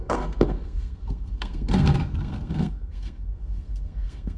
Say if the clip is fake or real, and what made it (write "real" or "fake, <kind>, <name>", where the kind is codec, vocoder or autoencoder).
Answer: fake, codec, SNAC